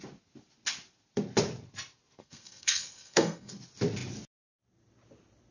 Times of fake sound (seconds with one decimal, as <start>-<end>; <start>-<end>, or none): 2.2-3.5